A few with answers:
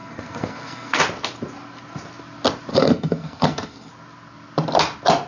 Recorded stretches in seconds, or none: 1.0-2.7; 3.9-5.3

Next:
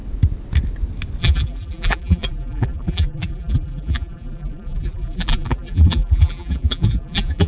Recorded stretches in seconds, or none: 0.0-1.2